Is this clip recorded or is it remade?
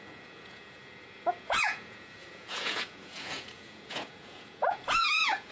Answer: remade